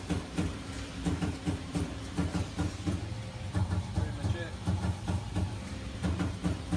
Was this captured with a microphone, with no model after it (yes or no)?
no